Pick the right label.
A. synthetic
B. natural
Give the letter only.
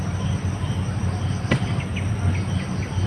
B